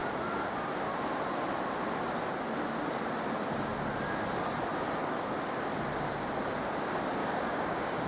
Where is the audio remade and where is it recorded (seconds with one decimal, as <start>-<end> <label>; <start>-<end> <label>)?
0.0-7.2 recorded; 7.2-8.1 remade